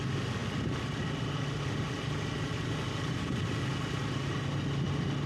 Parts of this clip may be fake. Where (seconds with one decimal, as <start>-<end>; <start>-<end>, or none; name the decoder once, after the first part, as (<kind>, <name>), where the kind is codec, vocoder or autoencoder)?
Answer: none